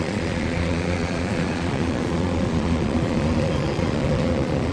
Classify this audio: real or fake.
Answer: fake